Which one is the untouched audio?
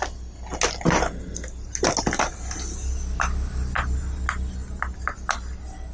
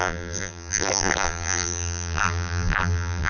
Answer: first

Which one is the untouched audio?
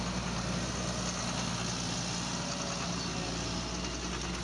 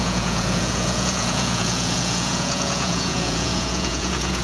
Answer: first